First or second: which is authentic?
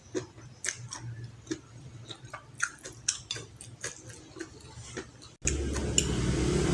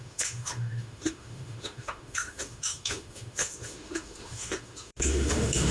first